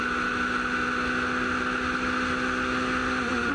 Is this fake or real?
real